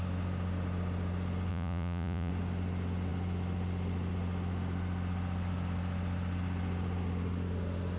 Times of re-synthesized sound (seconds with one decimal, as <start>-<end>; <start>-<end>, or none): 1.5-2.3

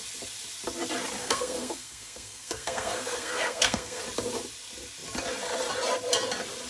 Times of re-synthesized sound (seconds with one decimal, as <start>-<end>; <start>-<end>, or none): 1.2-4.0

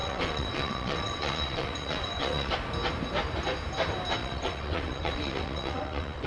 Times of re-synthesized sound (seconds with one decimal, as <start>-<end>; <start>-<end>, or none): 0.0-2.5; 4.2-6.3

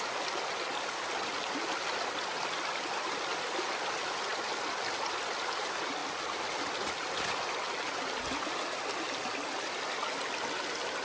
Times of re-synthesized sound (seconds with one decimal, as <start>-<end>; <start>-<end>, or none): none

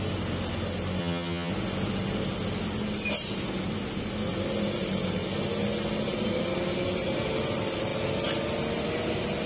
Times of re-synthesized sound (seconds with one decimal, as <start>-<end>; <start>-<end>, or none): 1.0-1.5

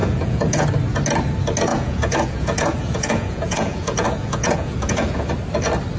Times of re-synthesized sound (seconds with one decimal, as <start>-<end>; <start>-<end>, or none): 0.0-0.7; 1.7-5.3